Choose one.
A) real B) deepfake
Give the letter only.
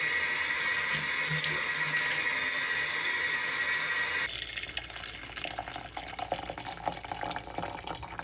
A